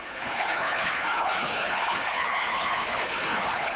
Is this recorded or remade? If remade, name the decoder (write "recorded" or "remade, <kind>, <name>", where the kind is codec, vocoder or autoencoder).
remade, codec, HILCodec